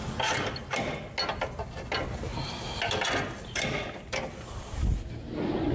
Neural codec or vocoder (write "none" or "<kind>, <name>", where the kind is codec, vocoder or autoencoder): none